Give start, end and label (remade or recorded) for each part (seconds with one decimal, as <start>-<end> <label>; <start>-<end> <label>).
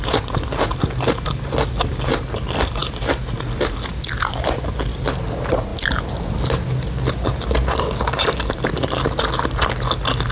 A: 0.0-10.3 recorded